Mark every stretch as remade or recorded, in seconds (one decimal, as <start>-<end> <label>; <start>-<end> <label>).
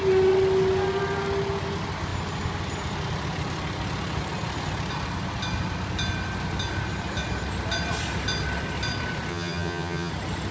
0.0-9.3 recorded; 9.3-10.1 remade; 10.1-10.5 recorded